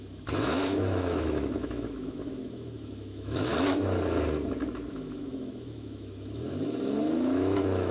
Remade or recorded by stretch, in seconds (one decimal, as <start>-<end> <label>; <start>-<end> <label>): 0.0-3.5 remade; 3.5-4.9 recorded; 4.9-7.9 remade